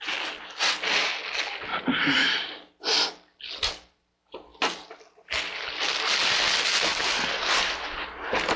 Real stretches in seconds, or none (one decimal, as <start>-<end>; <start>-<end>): 0.0-1.7; 2.4-8.6